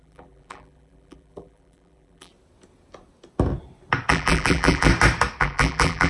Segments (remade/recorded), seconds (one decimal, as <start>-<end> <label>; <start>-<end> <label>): 0.0-2.3 remade; 2.3-4.1 recorded; 4.1-4.9 remade; 4.9-5.4 recorded; 5.4-6.1 remade